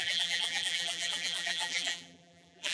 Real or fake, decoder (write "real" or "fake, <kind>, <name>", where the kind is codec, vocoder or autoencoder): fake, vocoder, BigVGAN v2